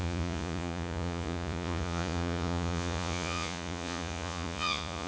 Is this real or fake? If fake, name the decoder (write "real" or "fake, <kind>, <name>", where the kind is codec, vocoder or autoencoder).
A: fake, vocoder, Vocos